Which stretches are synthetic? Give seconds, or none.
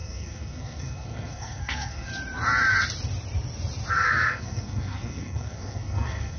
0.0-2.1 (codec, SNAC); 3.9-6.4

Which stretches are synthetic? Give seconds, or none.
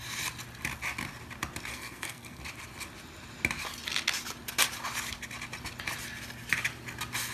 1.7-2.4 (codec, SNAC)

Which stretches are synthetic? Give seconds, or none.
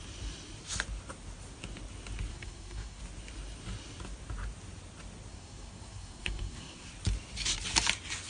2.3-3.0 (codec, SNAC); 5.3-6.9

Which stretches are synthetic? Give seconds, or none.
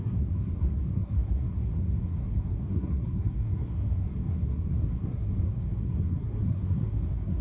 0.0-7.4 (codec, SNAC)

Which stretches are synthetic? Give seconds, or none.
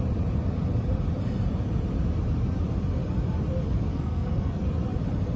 3.9-4.6 (codec, SNAC)